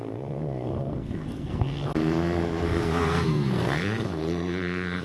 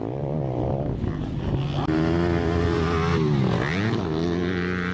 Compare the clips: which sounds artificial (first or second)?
first